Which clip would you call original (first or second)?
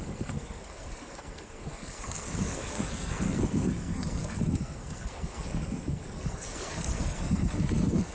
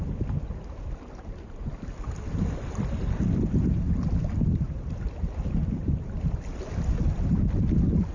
second